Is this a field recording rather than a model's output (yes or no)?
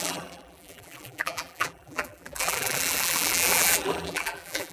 no